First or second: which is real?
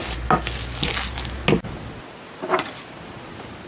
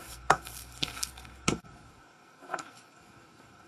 first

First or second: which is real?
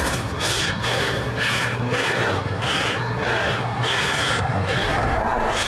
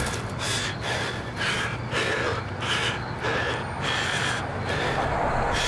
second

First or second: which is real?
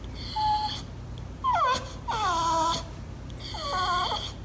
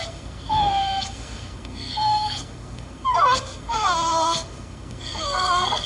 first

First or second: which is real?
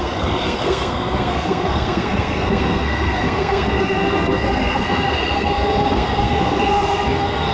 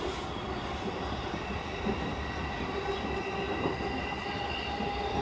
second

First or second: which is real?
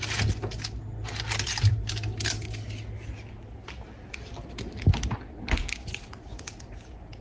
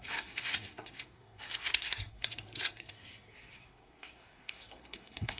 first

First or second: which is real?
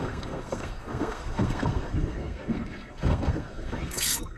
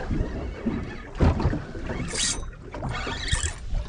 second